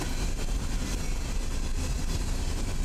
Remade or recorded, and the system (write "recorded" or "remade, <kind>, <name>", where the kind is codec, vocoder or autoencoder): recorded